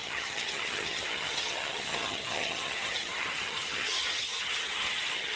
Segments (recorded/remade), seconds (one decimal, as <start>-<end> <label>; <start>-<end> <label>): 0.0-5.4 remade